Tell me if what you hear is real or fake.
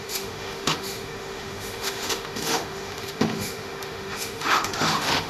fake